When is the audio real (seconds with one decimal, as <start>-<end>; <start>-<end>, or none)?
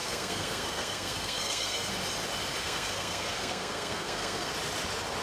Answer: 1.9-2.6; 4.5-5.2